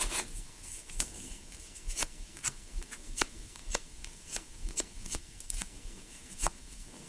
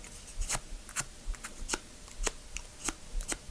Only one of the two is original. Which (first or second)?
second